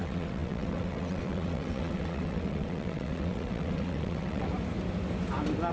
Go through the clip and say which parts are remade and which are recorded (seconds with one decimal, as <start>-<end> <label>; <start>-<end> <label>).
0.0-4.5 remade; 4.5-5.7 recorded